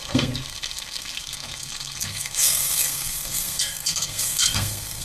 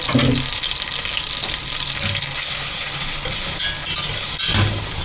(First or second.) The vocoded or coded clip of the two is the first